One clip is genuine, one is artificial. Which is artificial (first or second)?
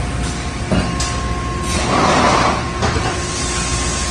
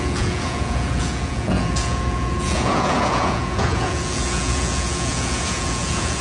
second